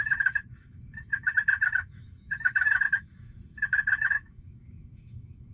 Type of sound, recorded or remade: remade